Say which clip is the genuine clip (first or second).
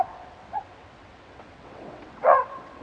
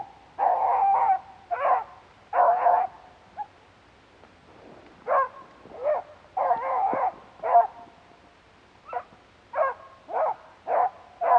second